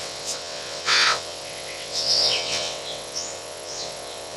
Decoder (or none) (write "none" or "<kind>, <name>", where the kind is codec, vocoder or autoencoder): vocoder, WaveNeXt